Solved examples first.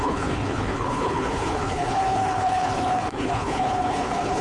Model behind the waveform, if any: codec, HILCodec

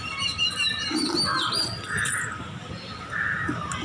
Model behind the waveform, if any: none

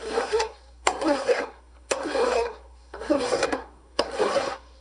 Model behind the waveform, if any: codec, SNAC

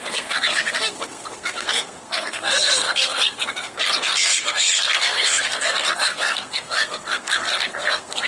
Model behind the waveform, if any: codec, SNAC